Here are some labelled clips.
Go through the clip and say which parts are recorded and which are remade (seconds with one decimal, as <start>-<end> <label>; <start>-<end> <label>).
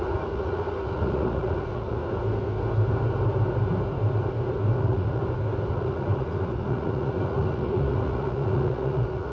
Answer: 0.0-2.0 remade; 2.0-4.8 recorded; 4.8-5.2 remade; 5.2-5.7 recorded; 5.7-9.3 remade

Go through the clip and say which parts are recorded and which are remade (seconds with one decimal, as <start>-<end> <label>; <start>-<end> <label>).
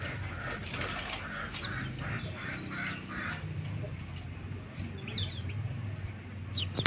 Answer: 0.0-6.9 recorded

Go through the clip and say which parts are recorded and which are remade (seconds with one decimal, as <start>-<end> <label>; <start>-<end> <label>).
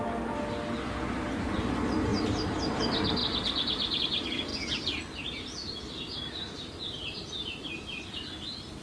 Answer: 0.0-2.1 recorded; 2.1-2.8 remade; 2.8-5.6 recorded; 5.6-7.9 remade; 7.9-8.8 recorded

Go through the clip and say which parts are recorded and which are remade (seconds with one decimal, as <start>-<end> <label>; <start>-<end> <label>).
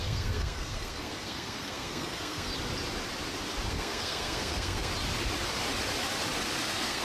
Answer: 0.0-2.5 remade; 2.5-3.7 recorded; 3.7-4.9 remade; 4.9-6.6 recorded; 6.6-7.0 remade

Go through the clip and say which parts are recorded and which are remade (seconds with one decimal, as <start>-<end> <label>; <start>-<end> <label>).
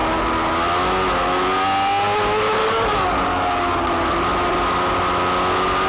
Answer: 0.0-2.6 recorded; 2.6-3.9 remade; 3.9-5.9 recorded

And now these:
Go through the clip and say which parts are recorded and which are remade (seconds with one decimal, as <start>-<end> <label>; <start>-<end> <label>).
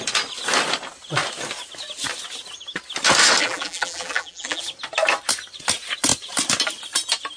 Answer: 0.0-3.4 recorded; 3.4-4.6 remade; 4.6-7.4 recorded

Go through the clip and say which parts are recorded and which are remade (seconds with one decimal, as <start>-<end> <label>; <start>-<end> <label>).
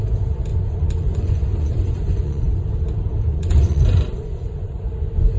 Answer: 0.0-0.5 recorded; 0.5-2.7 remade; 2.7-3.3 recorded; 3.3-5.4 remade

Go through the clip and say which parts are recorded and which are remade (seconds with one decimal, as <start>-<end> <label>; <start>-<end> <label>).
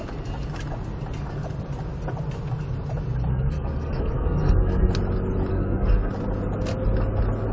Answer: 0.0-3.3 recorded; 3.3-4.9 remade; 4.9-5.5 recorded; 5.5-6.1 remade; 6.1-7.5 recorded